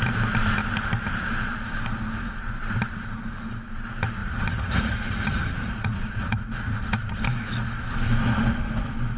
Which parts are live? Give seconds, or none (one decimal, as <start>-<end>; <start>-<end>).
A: 0.0-4.2; 7.2-9.2